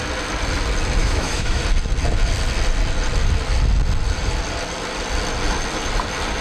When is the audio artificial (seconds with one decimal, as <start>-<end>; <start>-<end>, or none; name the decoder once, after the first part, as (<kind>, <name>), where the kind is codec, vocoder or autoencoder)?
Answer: 1.0-1.6 (autoencoder, DAC-VAE)

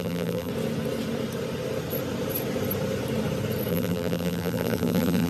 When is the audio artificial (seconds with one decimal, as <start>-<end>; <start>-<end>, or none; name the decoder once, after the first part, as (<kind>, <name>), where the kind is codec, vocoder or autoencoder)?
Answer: 0.0-0.5 (vocoder, BigVGAN v2); 3.7-5.3